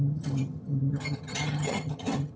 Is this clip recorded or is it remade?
remade